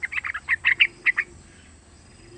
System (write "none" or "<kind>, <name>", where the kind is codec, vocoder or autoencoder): none